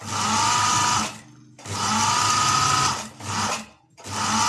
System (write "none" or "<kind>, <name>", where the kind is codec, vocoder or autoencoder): none